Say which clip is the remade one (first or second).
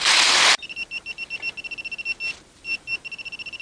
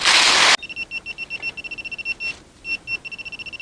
first